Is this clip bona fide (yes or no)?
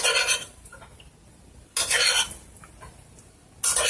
yes